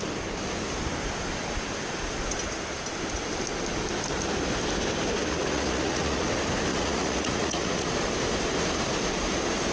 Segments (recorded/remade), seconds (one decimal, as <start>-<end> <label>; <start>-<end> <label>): 0.0-5.2 recorded; 5.2-6.3 remade; 6.3-6.7 recorded; 6.7-7.9 remade; 7.9-9.7 recorded